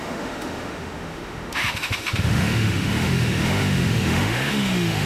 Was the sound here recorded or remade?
remade